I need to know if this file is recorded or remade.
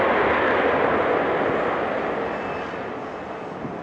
recorded